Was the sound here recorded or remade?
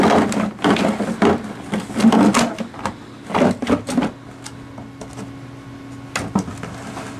recorded